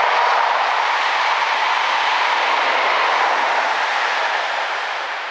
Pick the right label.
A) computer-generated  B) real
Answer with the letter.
B